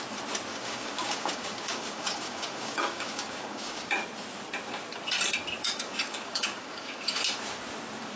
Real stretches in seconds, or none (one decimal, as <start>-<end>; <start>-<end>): 0.0-0.5; 3.9-5.6; 7.2-8.2